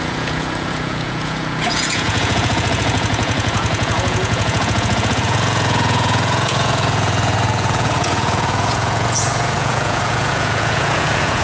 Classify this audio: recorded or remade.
remade